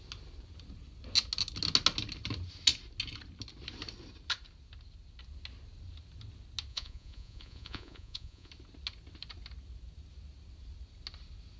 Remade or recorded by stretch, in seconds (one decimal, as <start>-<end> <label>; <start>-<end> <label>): 0.0-6.7 recorded; 6.7-8.5 remade; 8.5-11.6 recorded